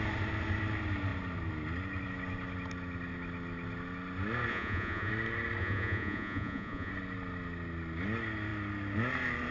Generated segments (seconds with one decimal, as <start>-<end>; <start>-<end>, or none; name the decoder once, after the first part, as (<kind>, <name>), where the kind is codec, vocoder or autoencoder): 4.5-5.1 (vocoder, Vocos); 5.6-6.9